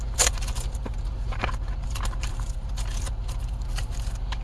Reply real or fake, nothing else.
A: fake